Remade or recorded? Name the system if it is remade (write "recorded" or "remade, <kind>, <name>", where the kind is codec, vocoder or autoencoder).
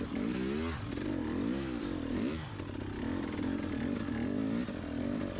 recorded